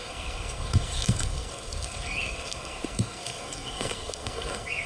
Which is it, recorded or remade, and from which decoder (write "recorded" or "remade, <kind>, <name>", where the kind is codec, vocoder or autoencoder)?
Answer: remade, codec, SNAC